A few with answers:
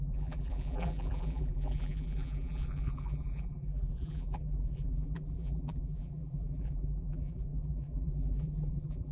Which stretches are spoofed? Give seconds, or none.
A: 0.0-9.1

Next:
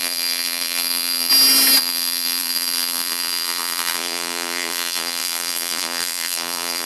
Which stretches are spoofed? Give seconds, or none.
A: 0.0-1.3; 1.8-6.9

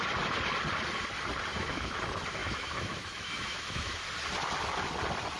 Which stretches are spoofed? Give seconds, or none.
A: 1.5-2.0; 2.4-4.0